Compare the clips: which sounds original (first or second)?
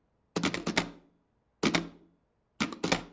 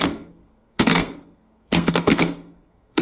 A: first